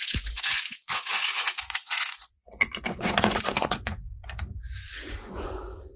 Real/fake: fake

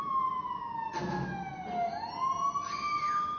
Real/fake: real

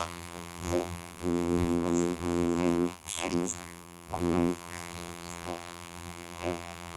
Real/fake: fake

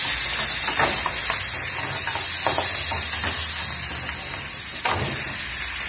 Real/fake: real